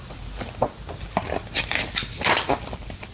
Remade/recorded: recorded